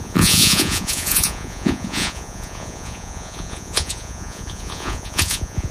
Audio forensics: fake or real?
fake